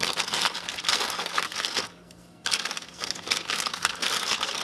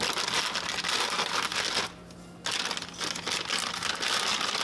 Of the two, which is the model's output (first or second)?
first